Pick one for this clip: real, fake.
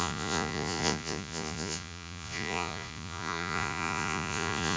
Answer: fake